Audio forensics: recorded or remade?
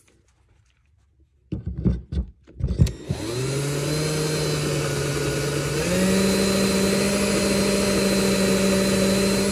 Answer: recorded